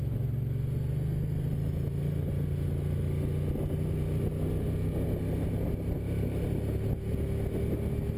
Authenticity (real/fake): real